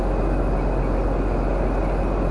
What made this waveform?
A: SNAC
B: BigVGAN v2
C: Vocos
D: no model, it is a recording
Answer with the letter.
D